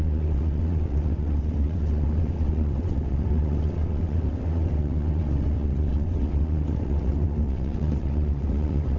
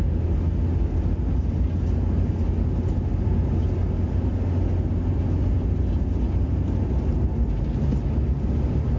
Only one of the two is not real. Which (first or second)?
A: first